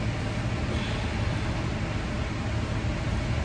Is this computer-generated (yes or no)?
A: no